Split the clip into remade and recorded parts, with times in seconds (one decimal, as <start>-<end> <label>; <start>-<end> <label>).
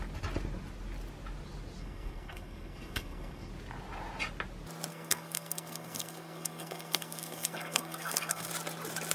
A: 0.0-1.8 recorded; 1.8-3.5 remade; 3.5-4.9 recorded; 4.9-8.5 remade; 8.5-9.1 recorded